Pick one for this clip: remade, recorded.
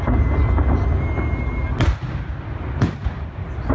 recorded